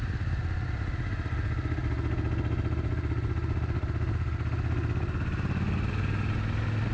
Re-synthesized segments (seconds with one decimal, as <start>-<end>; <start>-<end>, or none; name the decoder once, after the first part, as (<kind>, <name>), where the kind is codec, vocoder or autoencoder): none